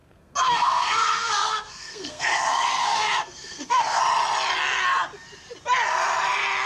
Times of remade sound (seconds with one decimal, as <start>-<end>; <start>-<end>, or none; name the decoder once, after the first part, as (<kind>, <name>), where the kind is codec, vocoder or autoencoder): 0.0-4.0 (codec, SNAC)